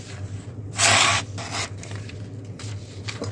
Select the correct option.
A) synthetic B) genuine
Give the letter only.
B